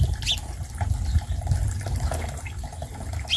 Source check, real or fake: real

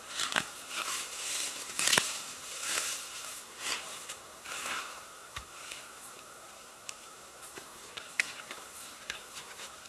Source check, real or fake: fake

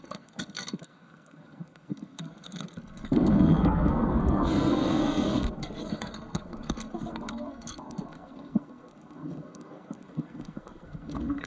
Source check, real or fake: fake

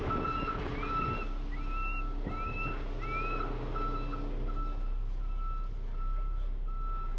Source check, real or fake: real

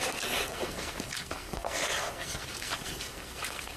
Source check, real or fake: fake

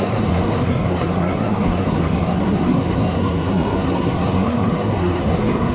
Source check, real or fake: fake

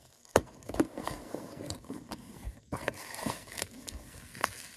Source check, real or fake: fake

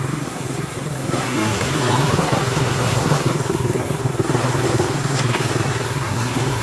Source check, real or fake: fake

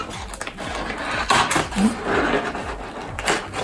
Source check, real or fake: real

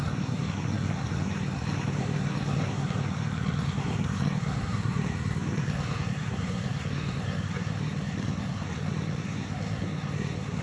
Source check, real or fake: fake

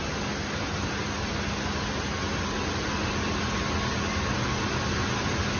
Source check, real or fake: real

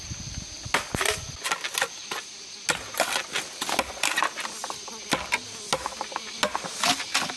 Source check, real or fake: real